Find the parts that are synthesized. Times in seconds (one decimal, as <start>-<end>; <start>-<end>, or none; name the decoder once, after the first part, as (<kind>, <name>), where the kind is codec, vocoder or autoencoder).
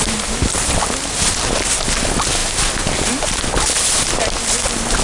none